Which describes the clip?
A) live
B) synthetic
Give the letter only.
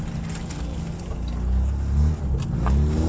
A